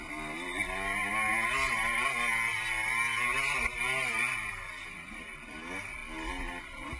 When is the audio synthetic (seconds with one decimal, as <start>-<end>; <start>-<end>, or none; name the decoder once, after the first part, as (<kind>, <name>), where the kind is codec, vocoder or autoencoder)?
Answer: none